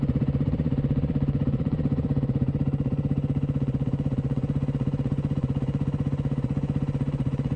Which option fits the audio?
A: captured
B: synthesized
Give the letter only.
B